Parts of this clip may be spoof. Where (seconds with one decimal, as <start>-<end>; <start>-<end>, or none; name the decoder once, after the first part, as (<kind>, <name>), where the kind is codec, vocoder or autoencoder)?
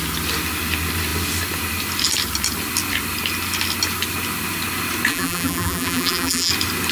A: 5.1-6.5 (vocoder, BigVGAN v2)